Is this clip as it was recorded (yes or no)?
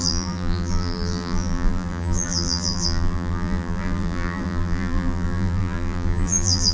no